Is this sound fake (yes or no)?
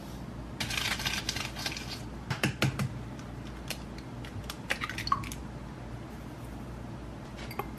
no